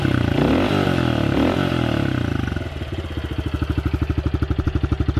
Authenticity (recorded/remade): recorded